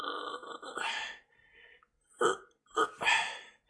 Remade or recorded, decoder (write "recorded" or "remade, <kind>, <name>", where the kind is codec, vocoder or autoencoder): recorded